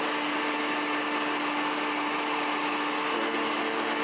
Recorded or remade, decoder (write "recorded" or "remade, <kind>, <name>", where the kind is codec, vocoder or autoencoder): recorded